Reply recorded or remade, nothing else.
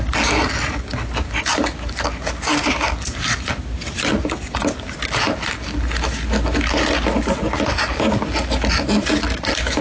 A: recorded